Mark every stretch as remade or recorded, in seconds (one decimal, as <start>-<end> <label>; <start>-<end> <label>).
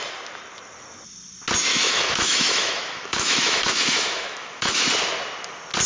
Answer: 0.0-1.7 recorded; 1.7-4.9 remade; 4.9-5.9 recorded